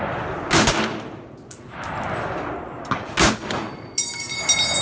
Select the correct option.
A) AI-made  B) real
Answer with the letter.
B